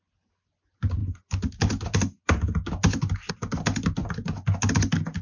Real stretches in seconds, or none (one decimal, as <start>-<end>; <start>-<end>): 0.0-5.2